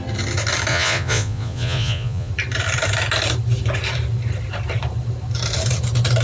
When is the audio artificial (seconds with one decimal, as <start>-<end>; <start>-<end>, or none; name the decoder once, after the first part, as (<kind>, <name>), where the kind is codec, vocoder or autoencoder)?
0.7-2.3 (vocoder, Vocos)